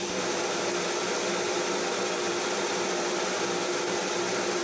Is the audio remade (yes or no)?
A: yes